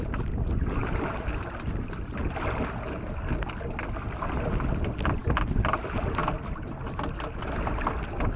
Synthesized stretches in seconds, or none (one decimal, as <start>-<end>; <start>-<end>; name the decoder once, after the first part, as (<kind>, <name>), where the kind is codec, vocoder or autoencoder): none